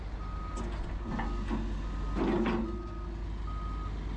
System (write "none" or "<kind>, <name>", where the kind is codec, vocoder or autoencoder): none